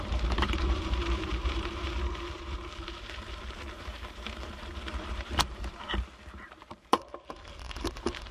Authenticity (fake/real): fake